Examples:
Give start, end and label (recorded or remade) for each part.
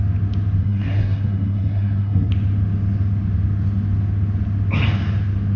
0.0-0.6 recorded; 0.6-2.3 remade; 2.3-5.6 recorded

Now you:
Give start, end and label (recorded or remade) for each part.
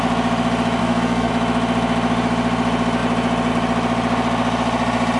0.0-0.8 recorded; 0.8-1.3 remade; 1.3-5.2 recorded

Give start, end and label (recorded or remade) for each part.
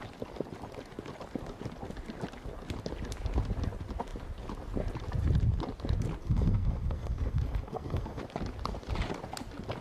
0.0-6.2 recorded; 6.2-8.2 remade; 8.2-9.8 recorded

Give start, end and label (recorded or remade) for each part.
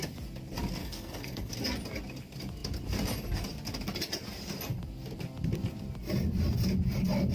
0.0-0.8 recorded; 0.8-1.5 remade; 1.5-7.3 recorded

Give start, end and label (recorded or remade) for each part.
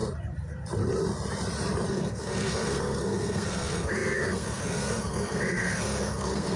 0.0-1.9 recorded; 1.9-6.6 remade